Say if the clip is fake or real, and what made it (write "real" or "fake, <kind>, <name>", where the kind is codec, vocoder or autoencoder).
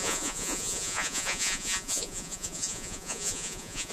fake, vocoder, Vocos